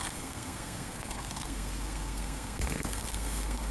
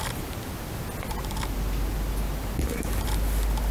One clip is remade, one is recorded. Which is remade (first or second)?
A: first